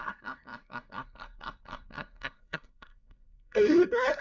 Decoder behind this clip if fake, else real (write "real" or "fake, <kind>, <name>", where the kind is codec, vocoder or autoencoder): fake, codec, SNAC